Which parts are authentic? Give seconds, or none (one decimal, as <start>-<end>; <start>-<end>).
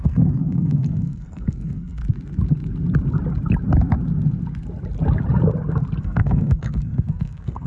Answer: 2.0-6.0